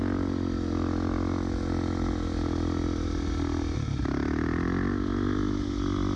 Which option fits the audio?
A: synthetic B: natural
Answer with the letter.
B